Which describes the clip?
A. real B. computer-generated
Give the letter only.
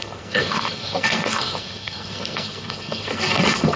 B